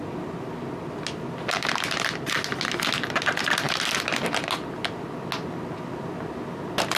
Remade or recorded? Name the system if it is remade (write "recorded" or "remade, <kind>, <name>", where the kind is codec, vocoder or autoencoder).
recorded